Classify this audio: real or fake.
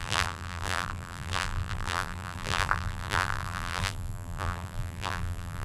fake